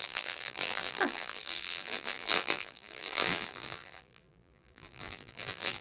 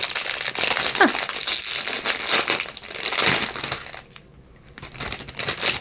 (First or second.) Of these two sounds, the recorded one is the second